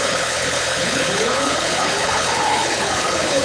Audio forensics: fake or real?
fake